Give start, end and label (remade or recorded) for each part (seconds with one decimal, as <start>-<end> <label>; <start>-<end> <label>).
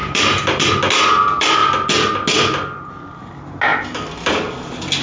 0.0-0.7 remade; 0.7-5.0 recorded